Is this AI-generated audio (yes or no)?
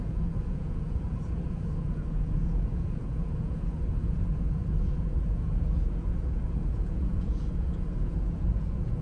yes